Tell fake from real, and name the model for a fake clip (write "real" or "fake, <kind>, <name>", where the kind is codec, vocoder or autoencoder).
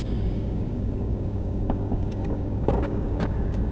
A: fake, codec, DAC